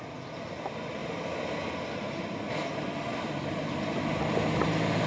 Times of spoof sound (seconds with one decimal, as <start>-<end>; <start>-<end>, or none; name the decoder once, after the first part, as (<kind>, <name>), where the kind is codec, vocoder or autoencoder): none